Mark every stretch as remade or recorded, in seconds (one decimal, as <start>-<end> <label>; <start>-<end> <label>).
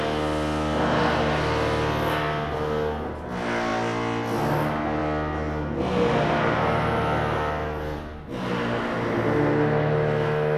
0.0-10.6 recorded